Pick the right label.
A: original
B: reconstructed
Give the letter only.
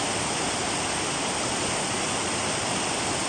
A